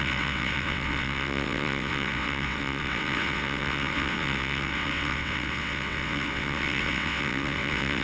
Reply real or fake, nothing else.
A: fake